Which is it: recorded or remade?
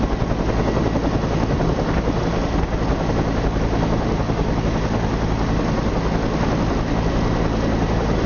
recorded